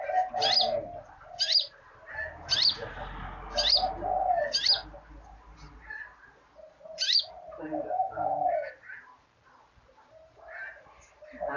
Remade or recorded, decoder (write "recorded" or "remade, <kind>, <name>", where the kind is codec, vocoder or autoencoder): recorded